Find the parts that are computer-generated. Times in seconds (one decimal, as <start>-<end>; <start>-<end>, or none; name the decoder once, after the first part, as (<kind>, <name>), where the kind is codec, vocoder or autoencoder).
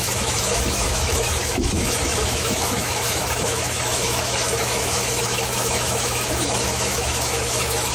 0.0-7.9 (autoencoder, DAC-VAE)